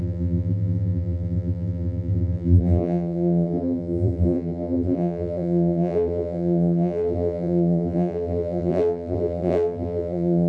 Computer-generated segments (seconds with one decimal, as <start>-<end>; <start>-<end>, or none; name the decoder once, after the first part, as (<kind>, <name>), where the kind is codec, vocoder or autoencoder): 0.0-10.5 (vocoder, BigVGAN v2)